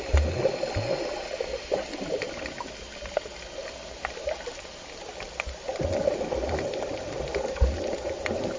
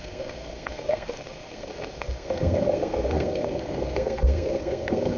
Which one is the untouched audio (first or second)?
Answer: first